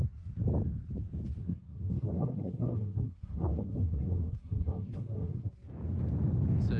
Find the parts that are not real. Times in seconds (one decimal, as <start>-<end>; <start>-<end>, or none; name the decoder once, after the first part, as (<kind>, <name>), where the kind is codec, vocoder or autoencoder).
1.4-5.5 (codec, SNAC)